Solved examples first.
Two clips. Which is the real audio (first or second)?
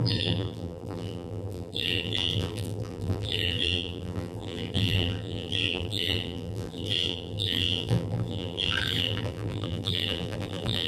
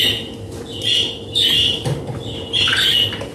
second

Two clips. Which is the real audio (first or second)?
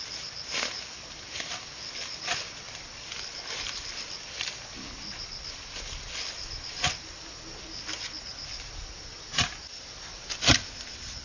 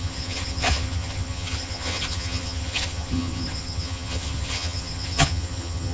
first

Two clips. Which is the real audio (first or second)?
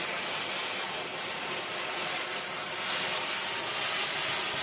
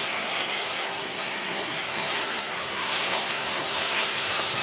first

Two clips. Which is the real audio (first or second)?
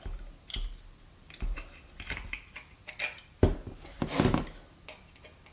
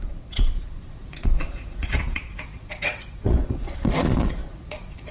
first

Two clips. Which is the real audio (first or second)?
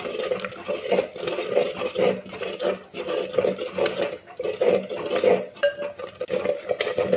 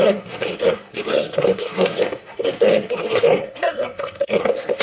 first